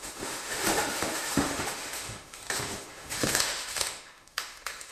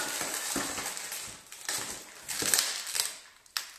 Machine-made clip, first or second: first